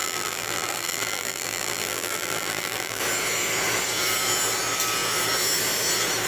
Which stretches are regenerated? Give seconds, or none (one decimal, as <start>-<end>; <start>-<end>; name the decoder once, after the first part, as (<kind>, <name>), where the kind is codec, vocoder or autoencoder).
0.0-3.0 (vocoder, BigVGAN v2)